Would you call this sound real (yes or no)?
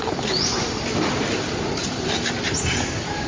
yes